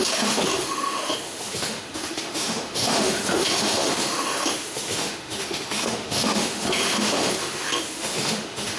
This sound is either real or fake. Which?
fake